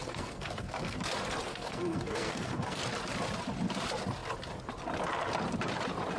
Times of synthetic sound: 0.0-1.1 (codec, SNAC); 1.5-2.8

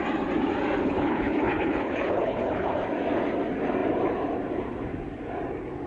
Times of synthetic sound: 0.8-2.8 (codec, HILCodec)

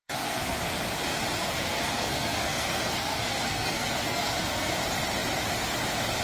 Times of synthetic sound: 0.0-0.6 (codec, SNAC); 1.4-4.7

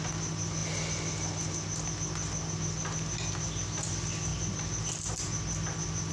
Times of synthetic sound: none